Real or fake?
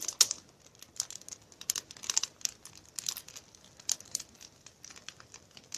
real